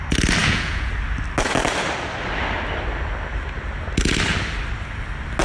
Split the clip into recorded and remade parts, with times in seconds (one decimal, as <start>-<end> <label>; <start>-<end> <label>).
0.0-0.4 recorded; 0.4-0.9 remade; 0.9-5.4 recorded